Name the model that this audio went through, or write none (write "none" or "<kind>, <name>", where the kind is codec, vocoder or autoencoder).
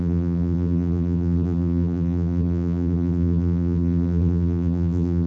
vocoder, BigVGAN v2